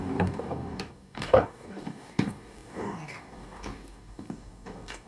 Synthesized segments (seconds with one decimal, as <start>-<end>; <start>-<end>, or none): 0.0-5.1